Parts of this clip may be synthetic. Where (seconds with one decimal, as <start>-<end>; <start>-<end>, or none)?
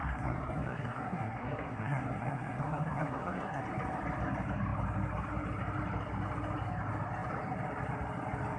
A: 0.0-3.6